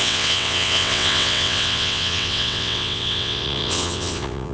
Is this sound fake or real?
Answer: fake